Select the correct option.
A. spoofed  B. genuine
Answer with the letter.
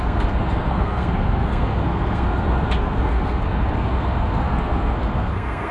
A